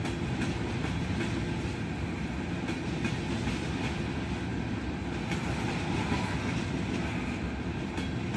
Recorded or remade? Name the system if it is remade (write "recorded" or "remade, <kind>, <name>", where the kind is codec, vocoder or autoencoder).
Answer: recorded